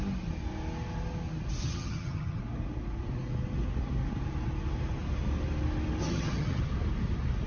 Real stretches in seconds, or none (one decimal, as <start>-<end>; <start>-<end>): 0.0-1.6; 2.4-6.0; 6.6-7.5